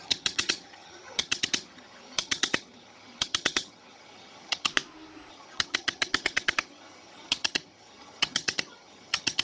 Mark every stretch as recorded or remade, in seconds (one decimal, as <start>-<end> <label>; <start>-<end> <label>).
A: 0.0-4.7 remade; 4.7-5.3 recorded; 5.3-9.4 remade